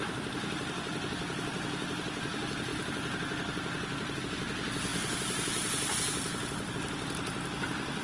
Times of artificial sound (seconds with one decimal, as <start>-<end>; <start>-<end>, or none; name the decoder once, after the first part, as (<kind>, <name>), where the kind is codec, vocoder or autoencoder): none